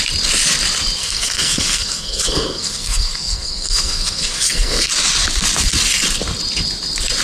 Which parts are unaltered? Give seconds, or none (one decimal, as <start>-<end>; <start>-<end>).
0.0-1.0; 4.9-7.2

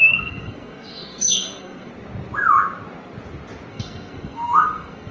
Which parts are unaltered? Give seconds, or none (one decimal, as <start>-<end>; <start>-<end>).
1.9-3.7

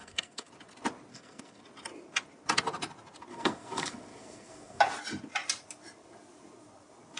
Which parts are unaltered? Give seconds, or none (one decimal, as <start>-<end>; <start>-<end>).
0.5-1.1; 1.6-3.3; 4.8-7.2

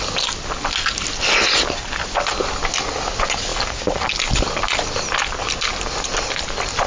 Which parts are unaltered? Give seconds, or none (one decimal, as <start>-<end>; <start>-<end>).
0.0-6.9

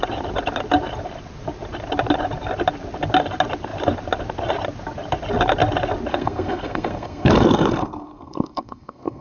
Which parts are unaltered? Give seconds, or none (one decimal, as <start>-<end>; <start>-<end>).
0.0-6.1

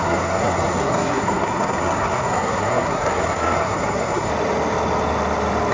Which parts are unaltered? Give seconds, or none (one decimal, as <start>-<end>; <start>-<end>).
4.3-5.7